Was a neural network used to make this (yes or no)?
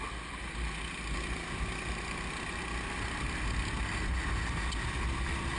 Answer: no